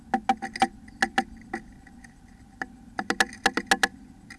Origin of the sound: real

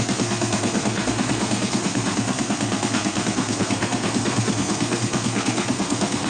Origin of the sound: fake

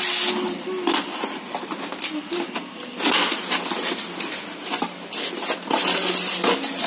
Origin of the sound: real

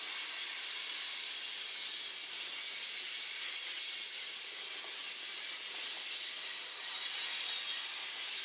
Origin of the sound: real